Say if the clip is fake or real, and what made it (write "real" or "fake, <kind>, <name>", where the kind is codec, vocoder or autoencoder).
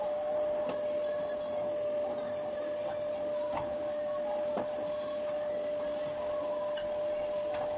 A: real